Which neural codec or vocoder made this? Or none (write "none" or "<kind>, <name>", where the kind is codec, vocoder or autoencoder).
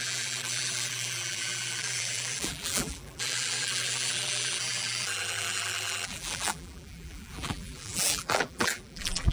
vocoder, BigVGAN v2